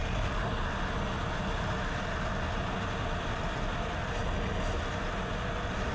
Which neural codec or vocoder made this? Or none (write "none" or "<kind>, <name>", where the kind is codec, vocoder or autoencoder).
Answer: none